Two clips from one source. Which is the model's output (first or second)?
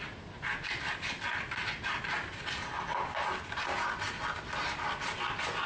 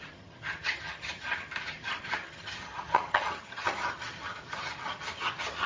second